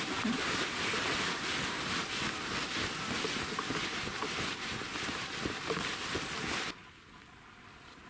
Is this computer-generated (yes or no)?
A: no